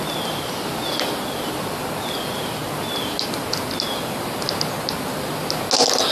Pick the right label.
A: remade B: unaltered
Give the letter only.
B